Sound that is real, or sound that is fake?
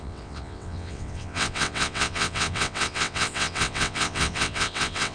fake